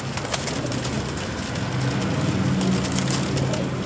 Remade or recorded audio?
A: recorded